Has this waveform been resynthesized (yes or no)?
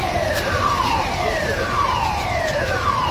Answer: yes